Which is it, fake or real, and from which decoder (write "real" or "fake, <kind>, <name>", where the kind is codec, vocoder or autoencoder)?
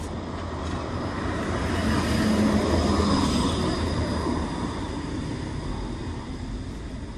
real